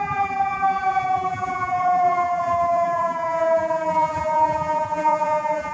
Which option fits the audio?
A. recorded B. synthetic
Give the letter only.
B